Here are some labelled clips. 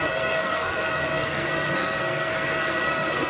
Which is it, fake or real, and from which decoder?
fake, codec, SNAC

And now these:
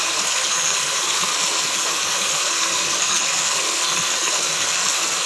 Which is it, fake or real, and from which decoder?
fake, codec, SNAC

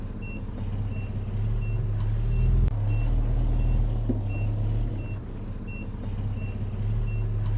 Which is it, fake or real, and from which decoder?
real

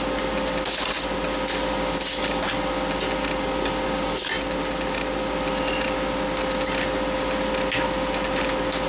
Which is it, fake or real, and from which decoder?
real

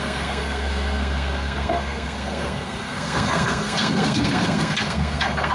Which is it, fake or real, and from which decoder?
fake, codec, SNAC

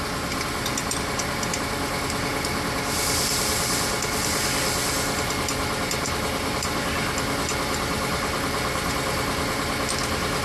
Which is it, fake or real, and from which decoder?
real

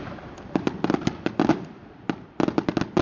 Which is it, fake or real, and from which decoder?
real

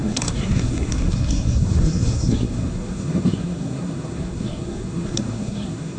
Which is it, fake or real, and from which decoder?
fake, codec, SNAC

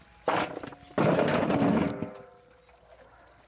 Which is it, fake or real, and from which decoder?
real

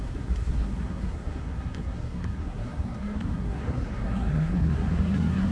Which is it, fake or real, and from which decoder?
fake, codec, SNAC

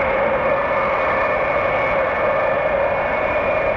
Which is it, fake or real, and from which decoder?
real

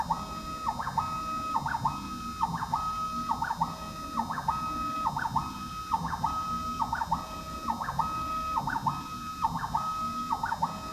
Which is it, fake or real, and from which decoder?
real